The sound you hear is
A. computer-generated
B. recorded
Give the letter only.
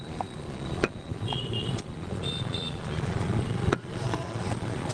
A